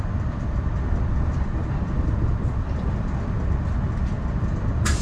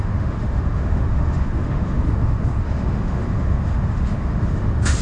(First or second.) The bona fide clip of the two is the first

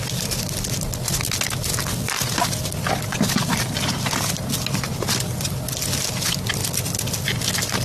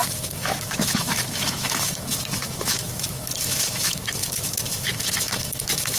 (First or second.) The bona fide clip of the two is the first